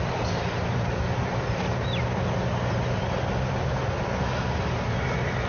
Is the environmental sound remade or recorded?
recorded